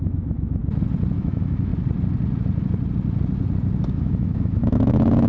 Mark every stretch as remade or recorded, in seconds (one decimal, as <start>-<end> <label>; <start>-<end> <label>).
0.0-0.6 remade; 0.6-1.2 recorded; 1.2-1.7 remade; 1.7-3.9 recorded; 3.9-5.3 remade